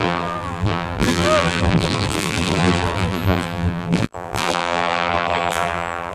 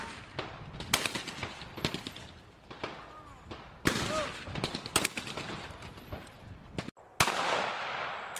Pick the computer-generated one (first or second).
first